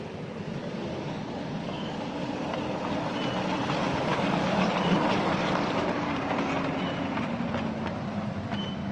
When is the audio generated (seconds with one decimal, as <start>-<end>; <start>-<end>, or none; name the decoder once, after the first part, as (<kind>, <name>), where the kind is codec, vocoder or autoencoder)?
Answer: 0.6-2.4 (codec, DAC); 3.8-6.2